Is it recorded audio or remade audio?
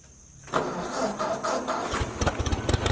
recorded